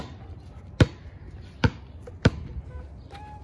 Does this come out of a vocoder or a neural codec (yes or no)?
yes